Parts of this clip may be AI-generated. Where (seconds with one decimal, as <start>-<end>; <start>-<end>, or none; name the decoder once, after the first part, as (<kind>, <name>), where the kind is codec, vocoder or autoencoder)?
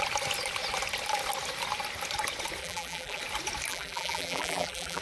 2.6-3.2 (vocoder, BigVGAN v2); 3.7-5.0